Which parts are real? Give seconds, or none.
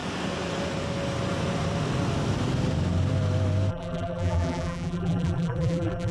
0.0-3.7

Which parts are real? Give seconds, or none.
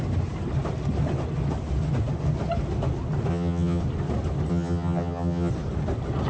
0.0-3.3; 3.8-4.5; 5.5-6.3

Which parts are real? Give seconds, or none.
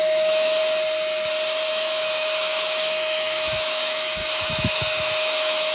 0.6-1.7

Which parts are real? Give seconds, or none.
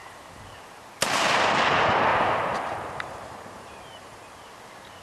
0.0-2.1; 4.4-5.0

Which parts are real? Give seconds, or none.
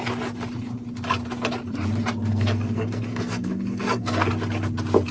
0.0-2.3; 4.3-5.1